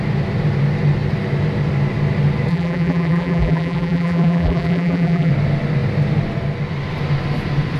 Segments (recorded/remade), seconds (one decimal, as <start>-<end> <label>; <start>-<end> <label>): 0.0-2.5 recorded; 2.5-5.3 remade; 5.3-7.8 recorded